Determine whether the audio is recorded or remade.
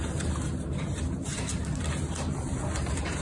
remade